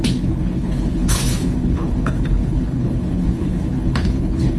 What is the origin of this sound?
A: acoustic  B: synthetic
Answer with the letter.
B